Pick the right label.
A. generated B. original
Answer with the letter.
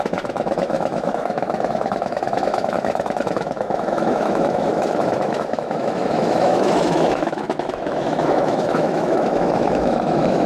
A